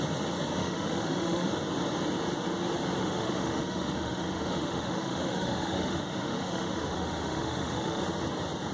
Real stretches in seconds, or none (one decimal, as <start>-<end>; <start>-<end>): 0.0-0.6; 1.5-3.0; 8.0-8.7